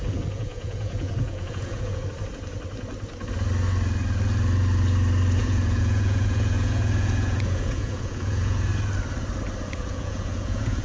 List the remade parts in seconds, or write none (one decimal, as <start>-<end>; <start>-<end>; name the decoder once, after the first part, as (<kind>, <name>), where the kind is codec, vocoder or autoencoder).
0.0-2.0 (vocoder, Vocos); 5.4-8.7; 9.7-10.8